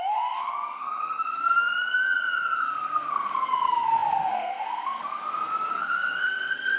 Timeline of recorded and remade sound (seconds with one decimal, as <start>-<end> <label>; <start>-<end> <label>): 0.0-1.7 remade; 1.7-2.6 recorded; 2.6-5.2 remade; 5.2-5.7 recorded; 5.7-6.8 remade